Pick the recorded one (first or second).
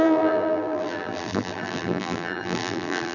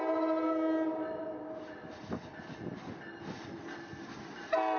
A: second